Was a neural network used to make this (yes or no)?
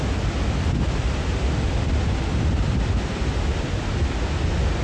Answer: no